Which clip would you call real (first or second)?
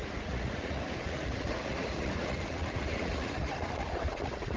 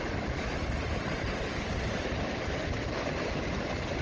second